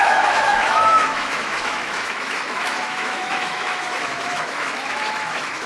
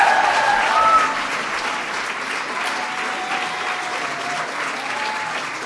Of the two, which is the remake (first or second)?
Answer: first